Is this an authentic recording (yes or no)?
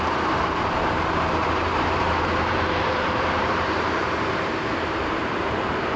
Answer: no